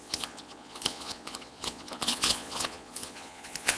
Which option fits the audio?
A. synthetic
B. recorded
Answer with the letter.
A